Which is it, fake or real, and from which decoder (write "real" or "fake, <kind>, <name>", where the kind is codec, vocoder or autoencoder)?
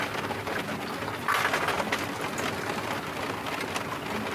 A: real